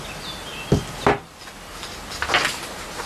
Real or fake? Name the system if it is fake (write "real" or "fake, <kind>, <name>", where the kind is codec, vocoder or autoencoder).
real